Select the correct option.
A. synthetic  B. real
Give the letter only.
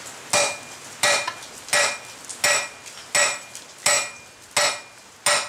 B